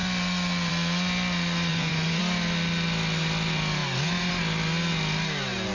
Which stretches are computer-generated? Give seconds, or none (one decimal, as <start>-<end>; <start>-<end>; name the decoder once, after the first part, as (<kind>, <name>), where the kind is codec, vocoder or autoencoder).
1.7-2.2 (vocoder, Vocos)

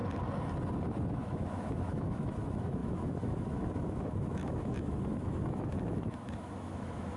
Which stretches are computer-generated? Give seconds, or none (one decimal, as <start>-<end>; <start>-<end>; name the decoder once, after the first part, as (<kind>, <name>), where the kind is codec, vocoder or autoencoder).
1.1-7.2 (autoencoder, DAC-VAE)

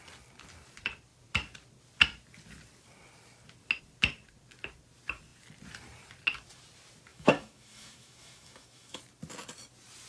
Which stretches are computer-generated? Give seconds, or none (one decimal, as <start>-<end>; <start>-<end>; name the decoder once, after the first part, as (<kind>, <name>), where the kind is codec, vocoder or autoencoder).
7.1-9.0 (autoencoder, DAC-VAE)

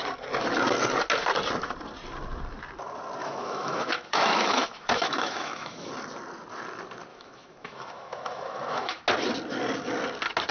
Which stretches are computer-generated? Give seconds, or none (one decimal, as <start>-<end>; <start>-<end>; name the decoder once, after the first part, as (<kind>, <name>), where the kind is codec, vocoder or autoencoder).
3.2-5.9 (autoencoder, DAC-VAE); 7.1-9.0

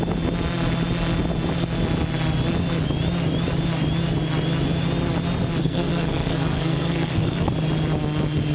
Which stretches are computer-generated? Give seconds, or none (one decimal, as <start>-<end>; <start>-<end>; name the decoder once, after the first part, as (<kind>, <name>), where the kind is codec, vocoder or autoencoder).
5.6-7.5 (codec, SNAC)

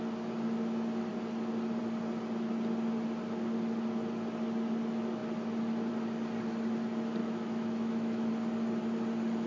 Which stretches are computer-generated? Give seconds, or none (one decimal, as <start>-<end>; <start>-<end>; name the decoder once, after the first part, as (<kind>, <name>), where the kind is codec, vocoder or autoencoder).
7.2-8.3 (autoencoder, DAC-VAE)

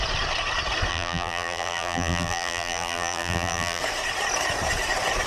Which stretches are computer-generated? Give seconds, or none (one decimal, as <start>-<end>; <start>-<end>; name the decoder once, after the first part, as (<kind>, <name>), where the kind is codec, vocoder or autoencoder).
0.9-3.8 (vocoder, BigVGAN v2)

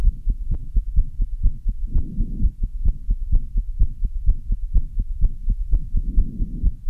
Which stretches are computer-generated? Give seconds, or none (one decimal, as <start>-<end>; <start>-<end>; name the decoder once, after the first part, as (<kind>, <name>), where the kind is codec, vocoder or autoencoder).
0.0-0.9 (vocoder, BigVGAN v2); 1.8-2.5; 5.4-6.1